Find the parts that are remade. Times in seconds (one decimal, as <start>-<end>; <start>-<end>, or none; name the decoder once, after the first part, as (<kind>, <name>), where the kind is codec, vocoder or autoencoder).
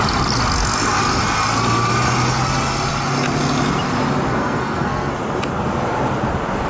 4.3-5.1 (codec, SNAC)